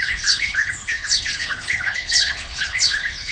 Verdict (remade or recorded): remade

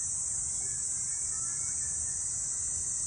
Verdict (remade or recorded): recorded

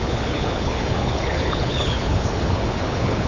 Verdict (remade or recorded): remade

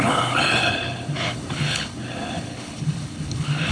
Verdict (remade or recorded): remade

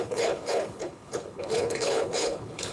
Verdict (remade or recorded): remade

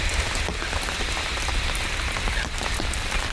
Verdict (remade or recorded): recorded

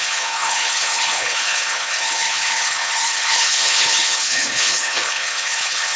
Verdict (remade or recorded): remade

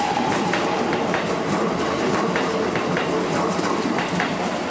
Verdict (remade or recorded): recorded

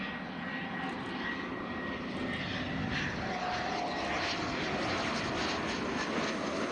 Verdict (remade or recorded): recorded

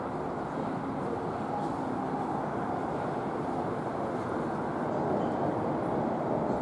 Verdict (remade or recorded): recorded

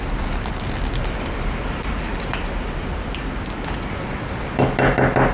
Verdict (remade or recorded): recorded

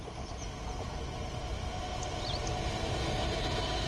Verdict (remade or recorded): recorded